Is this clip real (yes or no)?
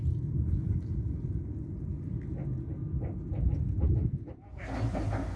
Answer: yes